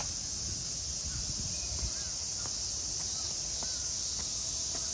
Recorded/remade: recorded